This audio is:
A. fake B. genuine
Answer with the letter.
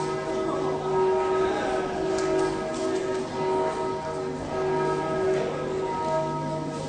B